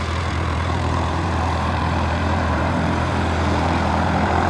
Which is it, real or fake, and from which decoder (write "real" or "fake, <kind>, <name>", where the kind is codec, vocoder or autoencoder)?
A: fake, vocoder, BigVGAN v2